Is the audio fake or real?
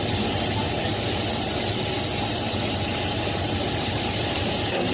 fake